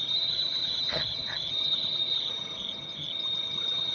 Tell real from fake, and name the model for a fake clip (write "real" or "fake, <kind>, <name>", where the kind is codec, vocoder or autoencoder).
fake, vocoder, HiFi-GAN